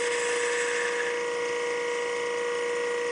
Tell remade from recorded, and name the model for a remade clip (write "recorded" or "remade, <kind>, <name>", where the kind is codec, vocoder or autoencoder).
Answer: recorded